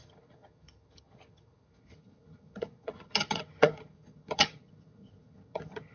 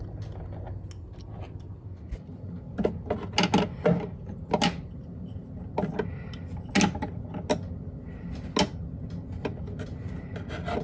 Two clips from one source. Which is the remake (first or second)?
first